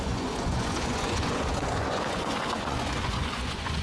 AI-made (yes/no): yes